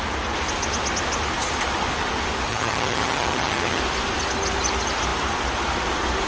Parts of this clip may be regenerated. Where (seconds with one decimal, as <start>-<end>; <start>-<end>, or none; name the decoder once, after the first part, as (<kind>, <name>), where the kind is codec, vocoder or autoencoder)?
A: 2.5-3.8 (vocoder, HiFi-GAN)